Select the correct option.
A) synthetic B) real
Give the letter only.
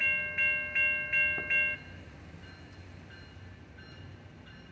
B